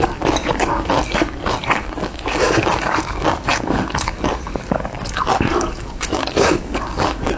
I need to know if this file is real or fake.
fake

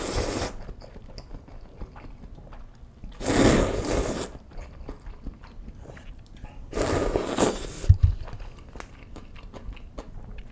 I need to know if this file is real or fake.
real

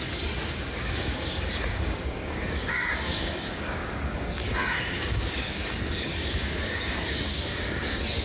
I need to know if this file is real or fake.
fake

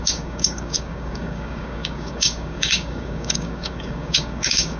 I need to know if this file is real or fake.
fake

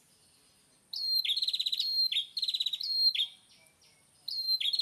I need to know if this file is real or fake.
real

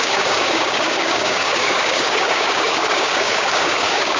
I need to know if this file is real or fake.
fake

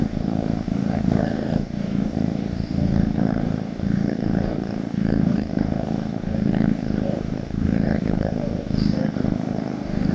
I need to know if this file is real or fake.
fake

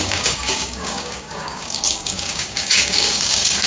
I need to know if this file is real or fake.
fake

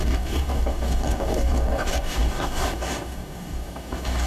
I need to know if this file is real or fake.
fake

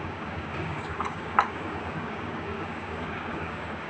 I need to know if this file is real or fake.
fake